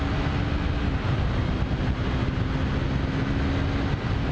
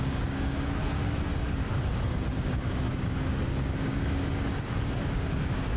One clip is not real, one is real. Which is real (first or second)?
first